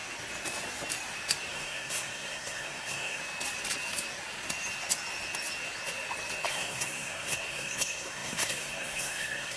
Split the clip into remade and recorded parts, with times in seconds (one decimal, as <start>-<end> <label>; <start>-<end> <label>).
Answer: 0.0-1.5 recorded; 1.5-3.2 remade; 3.2-6.5 recorded; 6.5-9.6 remade